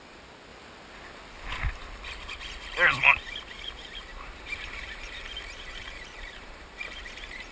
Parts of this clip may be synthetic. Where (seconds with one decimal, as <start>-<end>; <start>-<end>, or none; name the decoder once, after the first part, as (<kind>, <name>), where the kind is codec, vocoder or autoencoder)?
4.1-7.0 (vocoder, BigVGAN v2)